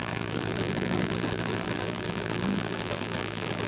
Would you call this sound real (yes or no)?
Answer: no